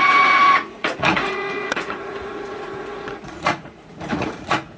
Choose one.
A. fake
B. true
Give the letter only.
A